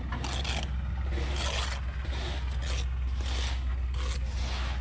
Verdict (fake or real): real